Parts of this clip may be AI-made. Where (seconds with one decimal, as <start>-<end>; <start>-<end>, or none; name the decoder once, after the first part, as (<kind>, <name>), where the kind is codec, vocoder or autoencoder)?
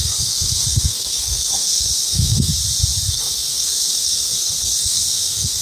0.0-2.5 (codec, SNAC); 3.1-5.6